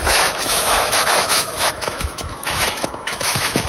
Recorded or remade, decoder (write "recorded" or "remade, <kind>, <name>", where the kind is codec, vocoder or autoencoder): remade, autoencoder, DAC-VAE